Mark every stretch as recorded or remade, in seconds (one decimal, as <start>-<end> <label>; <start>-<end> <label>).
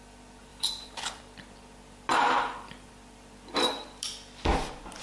0.0-0.5 recorded; 0.5-1.2 remade; 1.2-2.1 recorded; 2.1-2.9 remade; 2.9-5.0 recorded